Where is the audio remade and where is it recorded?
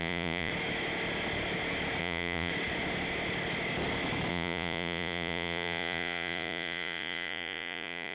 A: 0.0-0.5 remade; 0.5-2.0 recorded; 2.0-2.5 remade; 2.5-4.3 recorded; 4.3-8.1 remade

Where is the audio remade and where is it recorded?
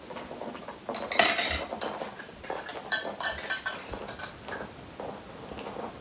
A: 0.0-6.0 recorded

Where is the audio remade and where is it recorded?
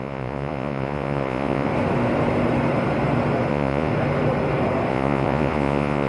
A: 0.0-1.7 remade; 1.7-3.5 recorded; 3.5-3.9 remade; 3.9-4.9 recorded; 4.9-6.1 remade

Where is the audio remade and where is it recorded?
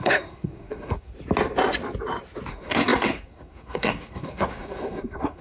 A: 0.0-1.1 remade; 1.1-2.5 recorded; 2.5-5.4 remade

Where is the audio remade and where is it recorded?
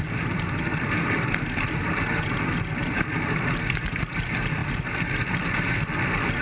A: 0.0-6.4 recorded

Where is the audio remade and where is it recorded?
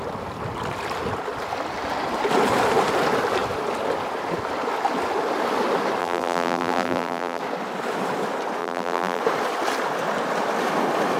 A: 0.0-6.0 recorded; 6.0-7.4 remade; 7.4-8.6 recorded; 8.6-9.2 remade; 9.2-11.2 recorded